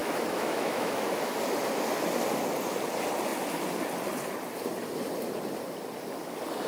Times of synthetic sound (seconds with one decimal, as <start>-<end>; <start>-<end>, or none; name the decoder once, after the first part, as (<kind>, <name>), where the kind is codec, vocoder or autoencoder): 0.0-1.3 (autoencoder, DAC-VAE)